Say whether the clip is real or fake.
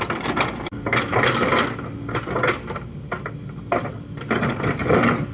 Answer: real